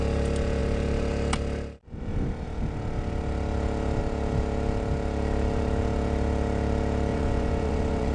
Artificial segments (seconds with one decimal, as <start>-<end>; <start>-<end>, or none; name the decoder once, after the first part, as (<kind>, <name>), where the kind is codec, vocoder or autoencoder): 7.1-8.1 (vocoder, Vocos)